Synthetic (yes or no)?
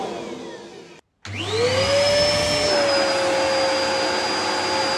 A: no